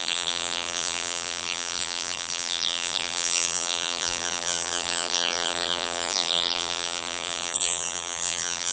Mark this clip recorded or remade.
remade